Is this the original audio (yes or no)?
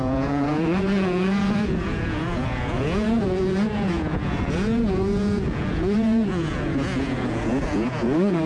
no